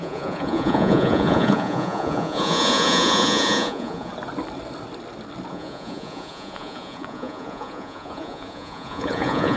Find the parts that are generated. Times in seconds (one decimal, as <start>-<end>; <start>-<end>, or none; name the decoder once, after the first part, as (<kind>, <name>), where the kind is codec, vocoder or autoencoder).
0.0-4.1 (vocoder, Vocos); 5.5-9.6